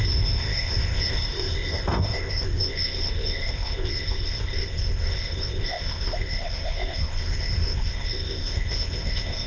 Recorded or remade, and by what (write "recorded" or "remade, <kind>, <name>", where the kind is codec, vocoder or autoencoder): remade, codec, ZipCodec